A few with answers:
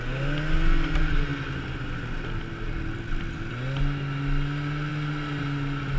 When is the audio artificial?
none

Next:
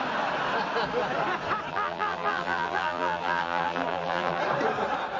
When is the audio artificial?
1.7-4.4 (vocoder, BigVGAN v2)

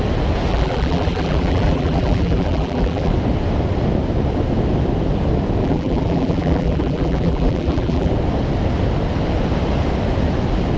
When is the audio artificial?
0.5-3.1 (vocoder, BigVGAN v2); 5.6-8.1

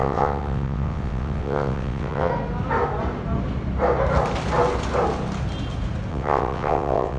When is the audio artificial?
0.0-2.3 (vocoder, WaveNeXt); 6.1-7.2

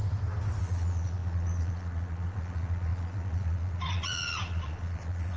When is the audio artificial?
0.6-5.4 (vocoder, Vocos)